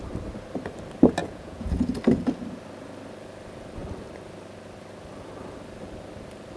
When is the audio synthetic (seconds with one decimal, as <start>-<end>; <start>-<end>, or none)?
1.2-2.0